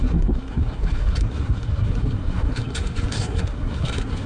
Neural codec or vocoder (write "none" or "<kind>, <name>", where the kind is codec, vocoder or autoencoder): codec, SNAC